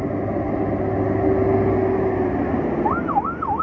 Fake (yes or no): no